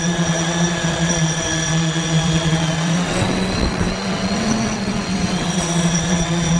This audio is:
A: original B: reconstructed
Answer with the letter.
B